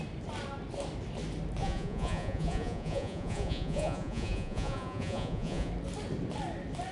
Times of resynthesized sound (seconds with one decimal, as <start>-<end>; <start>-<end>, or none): 1.6-5.7

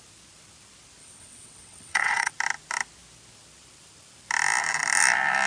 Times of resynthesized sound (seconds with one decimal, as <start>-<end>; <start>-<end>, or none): 1.0-2.3

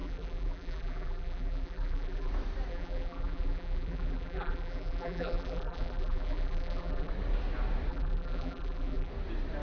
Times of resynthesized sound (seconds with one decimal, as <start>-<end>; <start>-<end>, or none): 0.0-2.3; 2.7-7.1; 7.9-9.1

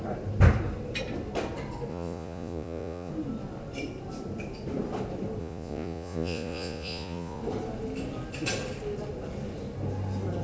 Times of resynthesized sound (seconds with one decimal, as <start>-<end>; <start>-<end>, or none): 1.9-3.1; 5.4-7.4

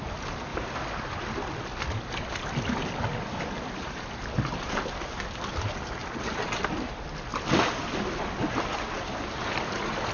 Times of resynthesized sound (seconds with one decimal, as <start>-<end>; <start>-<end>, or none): 0.5-1.2

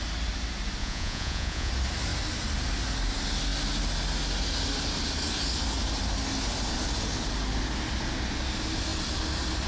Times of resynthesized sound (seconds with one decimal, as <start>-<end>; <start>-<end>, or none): 0.8-1.7

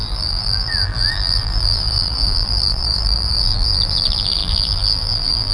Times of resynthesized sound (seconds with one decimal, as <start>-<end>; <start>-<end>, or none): 0.0-5.5

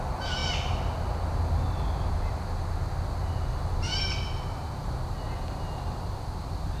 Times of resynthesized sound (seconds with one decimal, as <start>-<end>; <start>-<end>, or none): none